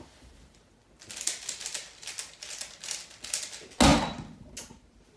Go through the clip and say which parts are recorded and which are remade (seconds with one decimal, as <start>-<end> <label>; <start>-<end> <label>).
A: 0.0-5.2 recorded